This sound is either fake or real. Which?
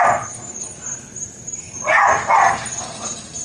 real